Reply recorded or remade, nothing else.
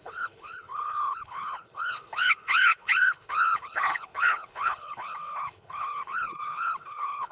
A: remade